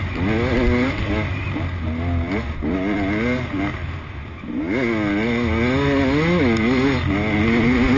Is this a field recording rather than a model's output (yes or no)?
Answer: yes